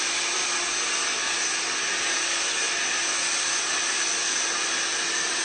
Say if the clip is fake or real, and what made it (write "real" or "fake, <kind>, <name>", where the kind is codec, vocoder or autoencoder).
real